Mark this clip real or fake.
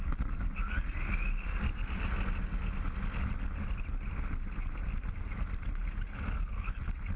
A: real